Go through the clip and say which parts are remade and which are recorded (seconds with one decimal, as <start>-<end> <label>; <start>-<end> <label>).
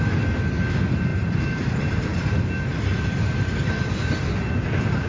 0.0-1.1 recorded; 1.1-2.2 remade; 2.2-2.7 recorded; 2.7-4.4 remade; 4.4-5.1 recorded